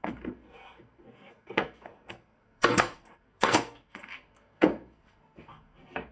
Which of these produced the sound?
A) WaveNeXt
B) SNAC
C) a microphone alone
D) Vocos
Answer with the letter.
B